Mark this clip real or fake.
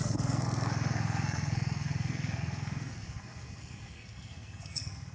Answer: fake